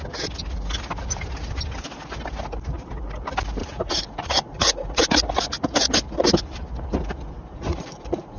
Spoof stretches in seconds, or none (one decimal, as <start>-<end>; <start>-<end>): 3.6-5.1; 7.7-8.4